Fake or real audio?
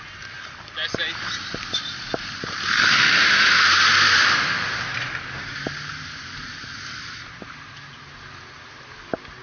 real